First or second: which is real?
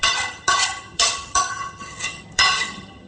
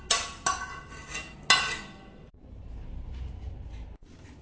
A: second